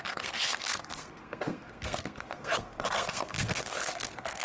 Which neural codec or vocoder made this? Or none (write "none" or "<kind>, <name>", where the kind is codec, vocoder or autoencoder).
codec, SNAC